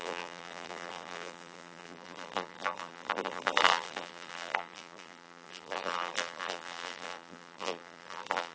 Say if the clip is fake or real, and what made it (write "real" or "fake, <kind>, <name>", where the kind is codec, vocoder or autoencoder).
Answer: fake, vocoder, BigVGAN v2